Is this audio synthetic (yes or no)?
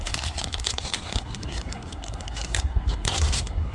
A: yes